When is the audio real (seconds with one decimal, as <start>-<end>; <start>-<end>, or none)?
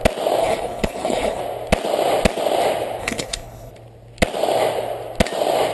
0.0-0.4; 1.4-3.0; 3.7-5.7